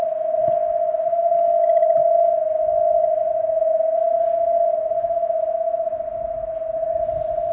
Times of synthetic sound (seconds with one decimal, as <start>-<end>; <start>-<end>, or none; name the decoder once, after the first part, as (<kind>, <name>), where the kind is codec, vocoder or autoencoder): none